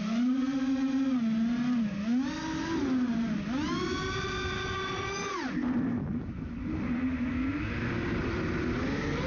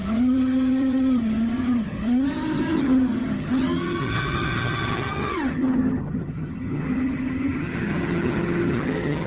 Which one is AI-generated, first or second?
second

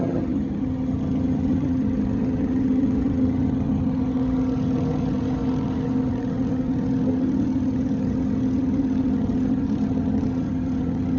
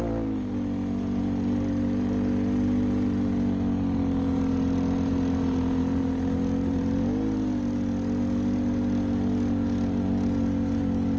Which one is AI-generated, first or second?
first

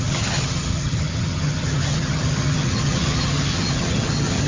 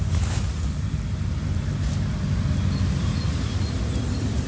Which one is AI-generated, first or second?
first